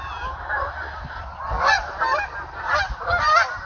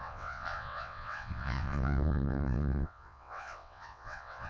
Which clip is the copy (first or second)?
second